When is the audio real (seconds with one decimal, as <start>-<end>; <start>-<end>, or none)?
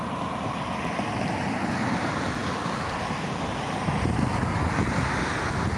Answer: 0.0-5.8